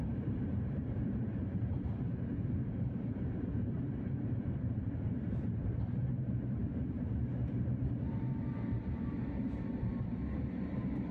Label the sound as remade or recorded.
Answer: remade